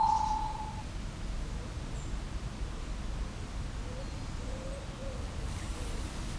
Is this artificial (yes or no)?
no